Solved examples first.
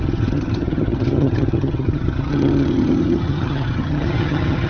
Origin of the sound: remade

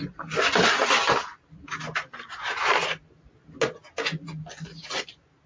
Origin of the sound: recorded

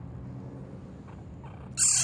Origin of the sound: recorded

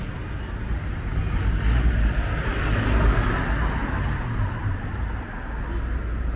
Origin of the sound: recorded